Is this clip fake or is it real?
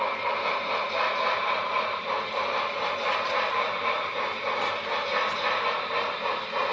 fake